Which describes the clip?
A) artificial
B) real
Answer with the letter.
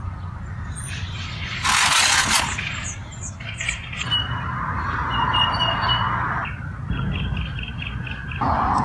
B